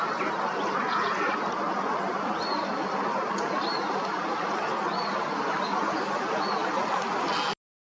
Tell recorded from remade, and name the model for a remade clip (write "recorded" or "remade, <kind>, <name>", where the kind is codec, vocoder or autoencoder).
recorded